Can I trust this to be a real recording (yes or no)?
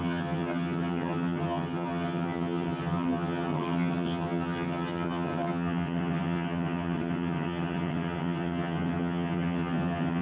no